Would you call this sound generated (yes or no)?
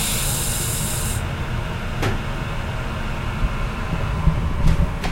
no